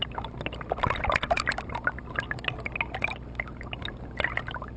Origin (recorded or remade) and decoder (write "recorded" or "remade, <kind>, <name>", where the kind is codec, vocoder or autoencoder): recorded